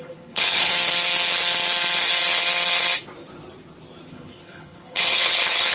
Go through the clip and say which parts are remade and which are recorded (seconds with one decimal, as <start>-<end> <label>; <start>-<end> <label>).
0.0-0.7 remade; 0.7-4.1 recorded; 4.1-5.7 remade